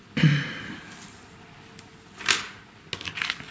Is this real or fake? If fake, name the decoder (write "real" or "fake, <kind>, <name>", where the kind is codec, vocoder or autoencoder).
real